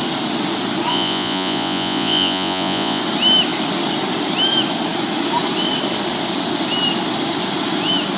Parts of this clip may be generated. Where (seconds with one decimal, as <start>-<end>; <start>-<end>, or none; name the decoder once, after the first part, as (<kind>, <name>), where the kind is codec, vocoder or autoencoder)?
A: 0.9-3.0 (vocoder, Vocos)

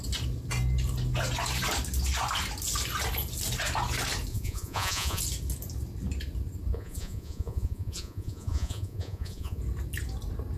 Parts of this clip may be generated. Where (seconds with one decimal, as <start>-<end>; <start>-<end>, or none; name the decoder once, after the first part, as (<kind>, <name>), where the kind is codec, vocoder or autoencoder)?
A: 4.3-5.2 (vocoder, Vocos); 6.7-9.6